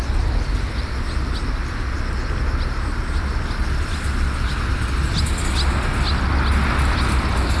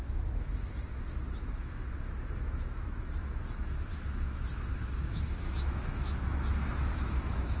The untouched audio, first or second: first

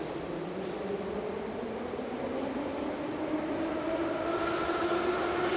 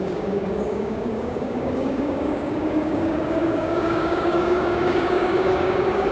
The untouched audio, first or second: first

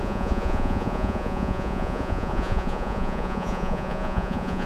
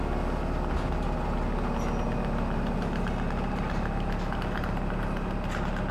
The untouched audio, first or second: second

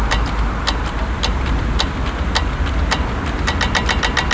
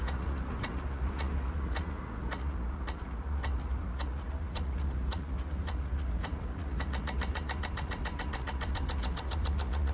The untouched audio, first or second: first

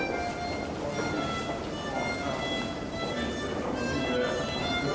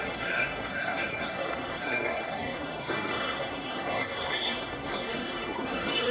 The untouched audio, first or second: first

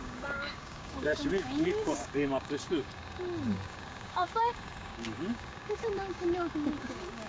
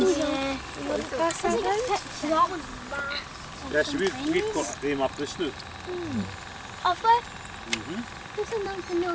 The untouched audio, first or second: second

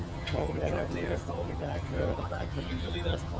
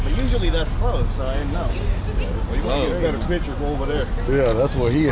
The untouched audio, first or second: second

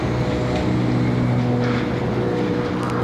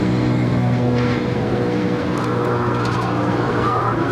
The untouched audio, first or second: first